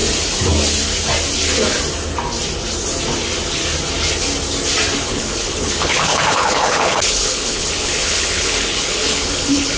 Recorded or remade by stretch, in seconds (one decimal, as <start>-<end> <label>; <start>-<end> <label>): 0.0-5.1 recorded; 5.1-9.8 remade